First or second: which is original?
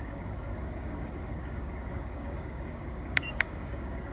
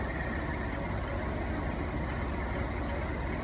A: second